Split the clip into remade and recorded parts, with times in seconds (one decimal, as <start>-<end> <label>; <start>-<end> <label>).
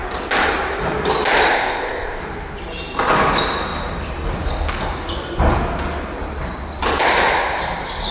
0.0-1.5 recorded; 1.5-2.2 remade; 2.2-8.1 recorded